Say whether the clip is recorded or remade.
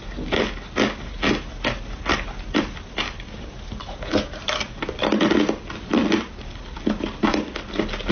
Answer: recorded